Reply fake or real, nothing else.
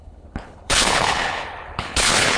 fake